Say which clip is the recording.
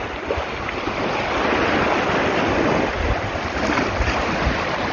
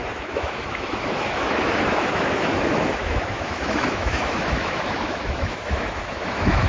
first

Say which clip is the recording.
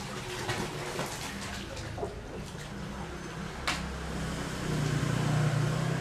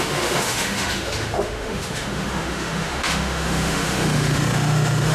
first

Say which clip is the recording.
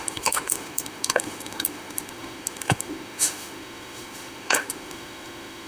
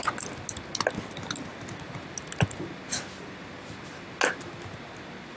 second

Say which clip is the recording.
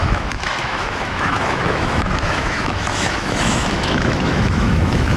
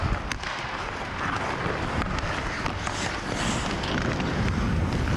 second